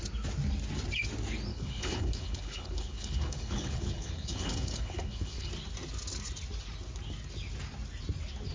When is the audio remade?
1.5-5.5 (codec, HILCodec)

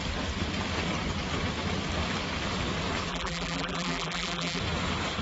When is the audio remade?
3.1-4.6 (vocoder, BigVGAN v2)

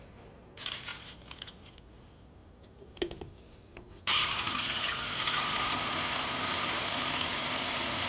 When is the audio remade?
none

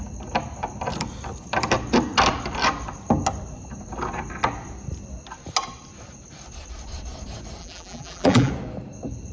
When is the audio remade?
7.6-8.5 (vocoder, BigVGAN v2)

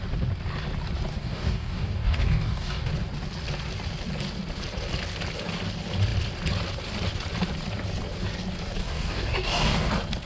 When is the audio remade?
1.1-2.9 (codec, DAC); 8.8-9.9